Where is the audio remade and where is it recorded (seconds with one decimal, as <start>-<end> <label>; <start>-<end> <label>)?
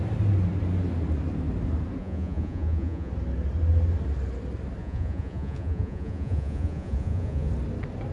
0.0-2.0 recorded; 2.0-3.1 remade; 3.1-4.8 recorded; 4.8-7.5 remade; 7.5-8.1 recorded